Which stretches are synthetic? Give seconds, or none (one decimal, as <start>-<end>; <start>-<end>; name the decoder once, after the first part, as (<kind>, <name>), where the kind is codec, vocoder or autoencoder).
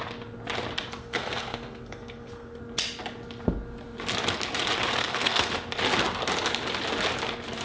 1.0-2.6 (codec, SNAC); 5.0-5.5